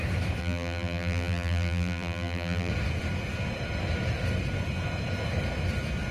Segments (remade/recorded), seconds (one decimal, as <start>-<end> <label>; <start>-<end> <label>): 0.0-0.4 recorded; 0.4-2.7 remade; 2.7-6.1 recorded